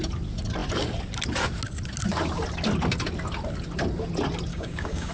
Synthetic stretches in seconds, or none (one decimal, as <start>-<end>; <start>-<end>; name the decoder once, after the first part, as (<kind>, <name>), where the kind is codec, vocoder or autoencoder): 4.5-5.1 (codec, DAC)